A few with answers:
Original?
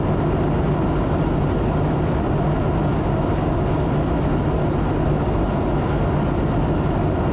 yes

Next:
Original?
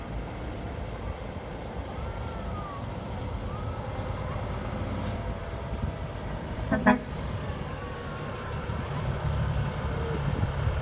no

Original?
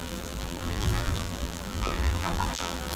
no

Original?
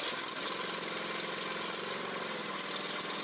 yes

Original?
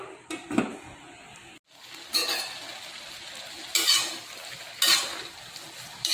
yes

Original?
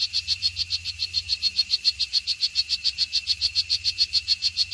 no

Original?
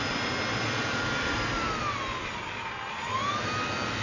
yes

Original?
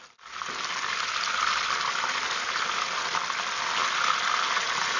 yes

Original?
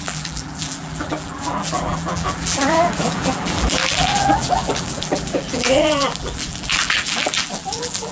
no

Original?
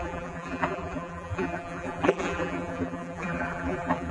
no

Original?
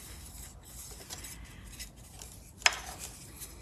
yes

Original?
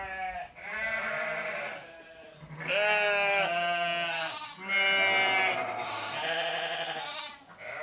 yes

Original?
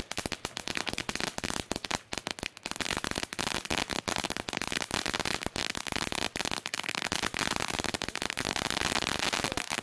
yes